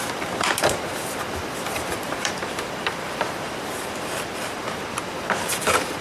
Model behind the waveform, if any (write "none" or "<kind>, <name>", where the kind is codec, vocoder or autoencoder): vocoder, BigVGAN v2